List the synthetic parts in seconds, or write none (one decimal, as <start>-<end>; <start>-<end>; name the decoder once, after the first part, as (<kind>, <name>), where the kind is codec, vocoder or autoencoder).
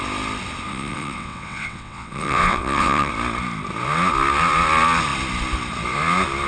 0.7-3.1 (vocoder, WaveNeXt)